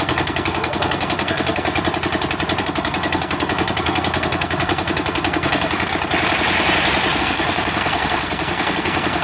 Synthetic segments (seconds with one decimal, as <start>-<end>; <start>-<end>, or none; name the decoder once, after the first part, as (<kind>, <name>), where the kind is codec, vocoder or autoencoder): 0.0-1.7 (codec, SNAC); 2.6-5.9; 7.2-9.2

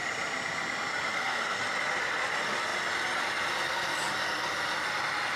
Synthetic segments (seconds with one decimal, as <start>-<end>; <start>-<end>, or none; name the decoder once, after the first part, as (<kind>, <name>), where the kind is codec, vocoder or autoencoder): 1.1-1.6 (codec, SNAC)

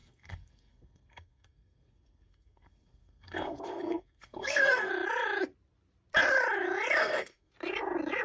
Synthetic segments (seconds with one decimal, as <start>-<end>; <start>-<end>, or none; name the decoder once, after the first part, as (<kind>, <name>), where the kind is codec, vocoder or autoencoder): 0.0-4.9 (codec, SNAC); 7.0-7.5

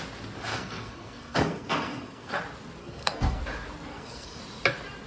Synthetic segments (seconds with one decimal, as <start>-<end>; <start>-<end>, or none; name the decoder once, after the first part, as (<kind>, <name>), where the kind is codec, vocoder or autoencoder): 0.5-2.4 (codec, SNAC); 2.8-3.4; 3.9-4.4